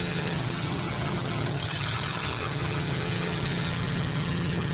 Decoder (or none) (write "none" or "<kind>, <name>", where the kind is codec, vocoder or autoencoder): vocoder, HiFi-GAN